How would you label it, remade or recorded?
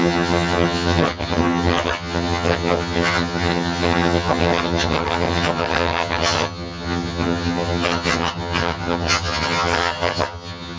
remade